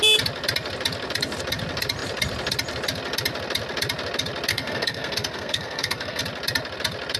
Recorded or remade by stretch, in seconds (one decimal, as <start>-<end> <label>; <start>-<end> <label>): 0.0-4.5 recorded; 4.5-6.2 remade; 6.2-7.2 recorded